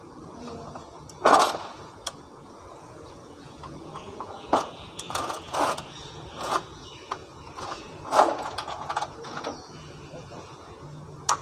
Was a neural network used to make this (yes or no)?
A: yes